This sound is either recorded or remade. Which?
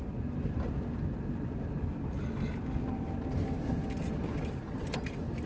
recorded